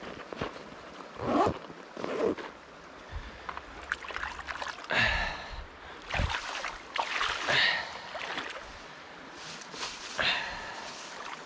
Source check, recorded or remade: recorded